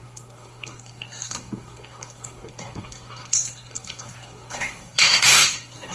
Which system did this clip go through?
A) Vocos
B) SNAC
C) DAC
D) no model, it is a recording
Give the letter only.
B